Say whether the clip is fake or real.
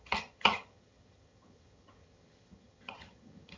fake